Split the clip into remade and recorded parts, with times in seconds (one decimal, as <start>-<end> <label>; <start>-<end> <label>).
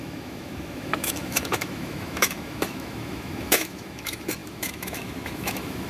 0.0-5.9 remade